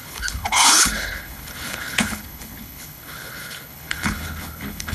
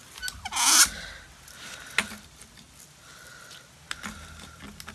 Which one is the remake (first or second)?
first